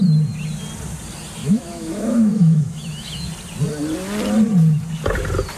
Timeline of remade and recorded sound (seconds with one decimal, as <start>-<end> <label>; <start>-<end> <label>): 0.0-1.4 recorded; 1.4-3.3 remade; 3.3-5.6 recorded